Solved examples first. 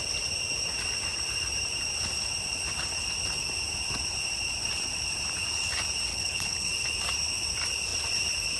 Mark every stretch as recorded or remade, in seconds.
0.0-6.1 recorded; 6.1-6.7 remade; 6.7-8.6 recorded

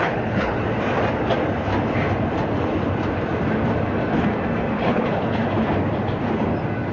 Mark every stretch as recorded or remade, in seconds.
0.0-0.6 remade; 0.6-4.7 recorded; 4.7-5.4 remade; 5.4-6.9 recorded

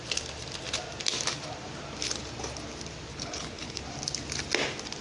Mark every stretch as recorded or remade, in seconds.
0.0-3.1 recorded; 3.1-3.8 remade; 3.8-5.0 recorded